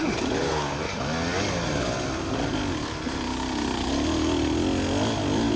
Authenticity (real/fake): real